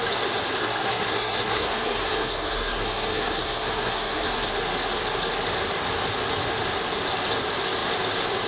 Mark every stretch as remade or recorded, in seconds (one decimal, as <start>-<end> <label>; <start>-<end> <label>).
0.0-0.6 recorded; 0.6-4.5 remade; 4.5-8.5 recorded

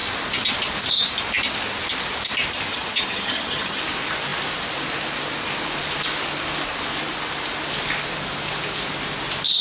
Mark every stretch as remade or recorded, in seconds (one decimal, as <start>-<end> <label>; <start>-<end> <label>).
0.0-2.7 recorded; 2.7-3.8 remade; 3.8-9.6 recorded